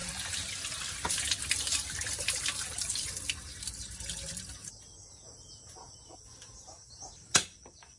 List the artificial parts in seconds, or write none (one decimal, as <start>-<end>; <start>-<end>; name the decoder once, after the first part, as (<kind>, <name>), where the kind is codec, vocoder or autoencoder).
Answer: none